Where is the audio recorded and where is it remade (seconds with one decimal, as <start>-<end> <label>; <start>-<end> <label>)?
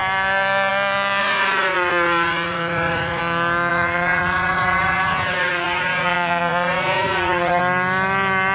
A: 0.0-1.2 recorded; 1.2-3.2 remade; 3.2-3.7 recorded; 3.7-7.6 remade; 7.6-8.5 recorded